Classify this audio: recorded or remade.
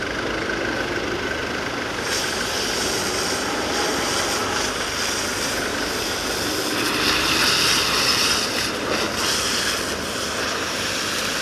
recorded